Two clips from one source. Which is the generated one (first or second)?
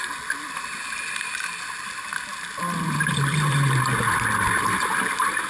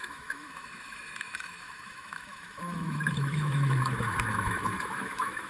second